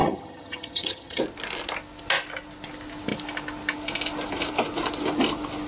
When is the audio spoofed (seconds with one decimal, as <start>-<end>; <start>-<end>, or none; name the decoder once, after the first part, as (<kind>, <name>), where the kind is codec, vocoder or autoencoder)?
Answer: 0.0-1.2 (vocoder, HiFi-GAN)